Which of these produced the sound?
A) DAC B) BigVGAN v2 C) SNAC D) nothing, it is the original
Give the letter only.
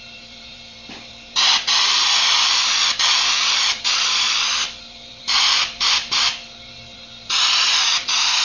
B